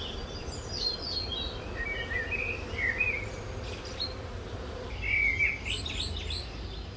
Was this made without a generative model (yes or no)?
yes